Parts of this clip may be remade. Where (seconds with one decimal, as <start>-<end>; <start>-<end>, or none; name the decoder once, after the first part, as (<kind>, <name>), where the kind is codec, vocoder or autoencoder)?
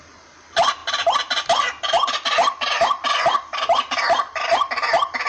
none